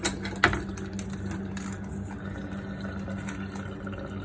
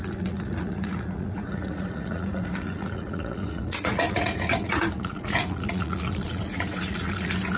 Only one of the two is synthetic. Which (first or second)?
second